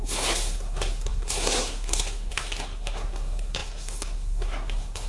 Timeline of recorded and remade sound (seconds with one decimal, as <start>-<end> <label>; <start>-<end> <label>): 0.0-5.1 remade